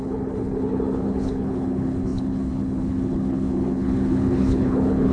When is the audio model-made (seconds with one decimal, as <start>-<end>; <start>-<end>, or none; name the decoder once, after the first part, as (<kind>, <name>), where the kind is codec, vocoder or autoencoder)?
0.0-5.1 (codec, HILCodec)